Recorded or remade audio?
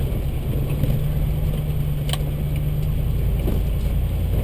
recorded